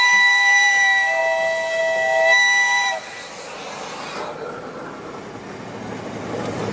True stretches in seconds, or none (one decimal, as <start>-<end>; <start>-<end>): 0.0-6.7